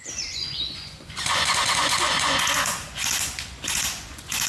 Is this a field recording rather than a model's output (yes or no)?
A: no